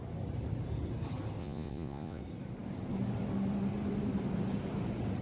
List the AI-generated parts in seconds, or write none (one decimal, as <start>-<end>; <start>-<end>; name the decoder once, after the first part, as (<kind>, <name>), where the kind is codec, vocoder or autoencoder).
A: 1.4-2.2 (vocoder, Vocos)